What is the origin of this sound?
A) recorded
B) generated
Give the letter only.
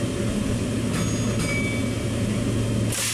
A